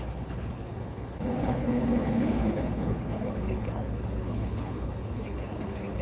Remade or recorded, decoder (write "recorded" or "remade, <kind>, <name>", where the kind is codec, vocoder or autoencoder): remade, codec, HILCodec